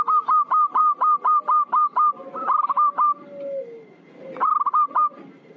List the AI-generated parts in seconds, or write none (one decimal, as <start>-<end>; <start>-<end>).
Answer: none